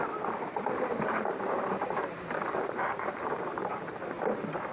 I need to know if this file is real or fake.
fake